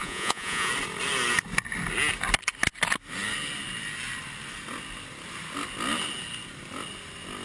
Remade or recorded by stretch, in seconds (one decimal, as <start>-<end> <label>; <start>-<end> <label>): 0.0-0.7 remade; 0.7-7.4 recorded